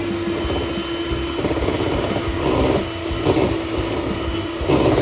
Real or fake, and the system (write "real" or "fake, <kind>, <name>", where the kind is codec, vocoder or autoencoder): real